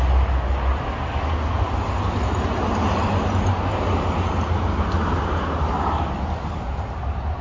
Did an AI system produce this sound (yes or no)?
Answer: no